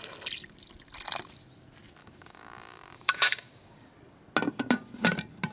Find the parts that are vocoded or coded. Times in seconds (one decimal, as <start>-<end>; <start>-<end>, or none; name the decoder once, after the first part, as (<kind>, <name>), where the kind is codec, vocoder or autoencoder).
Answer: 2.0-3.9 (codec, DAC)